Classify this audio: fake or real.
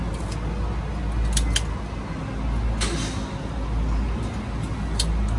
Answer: real